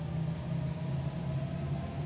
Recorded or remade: recorded